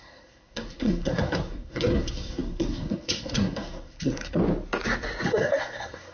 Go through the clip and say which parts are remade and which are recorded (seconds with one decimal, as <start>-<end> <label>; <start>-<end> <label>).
0.0-4.4 remade; 4.4-5.3 recorded; 5.3-6.1 remade